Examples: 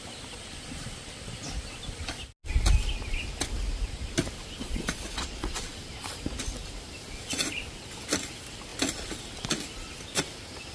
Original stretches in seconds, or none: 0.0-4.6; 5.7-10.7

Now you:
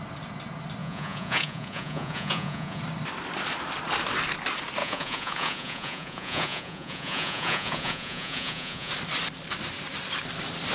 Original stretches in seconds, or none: 0.0-0.8; 2.8-4.8; 8.9-10.7

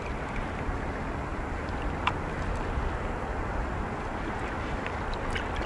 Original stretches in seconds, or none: 0.0-5.7

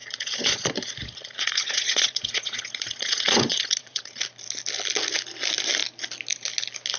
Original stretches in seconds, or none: 4.2-7.0

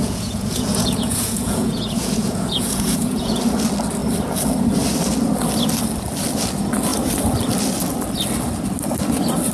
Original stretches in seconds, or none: 3.4-9.5

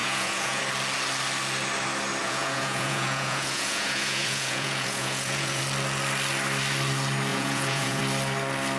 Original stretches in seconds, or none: 0.6-2.2; 5.6-7.3; 8.0-8.8

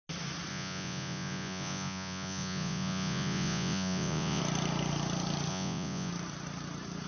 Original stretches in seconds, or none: 0.0-0.5; 4.4-5.5; 6.1-7.1